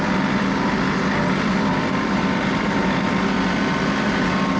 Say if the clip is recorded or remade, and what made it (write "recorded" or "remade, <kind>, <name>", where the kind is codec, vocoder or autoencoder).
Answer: recorded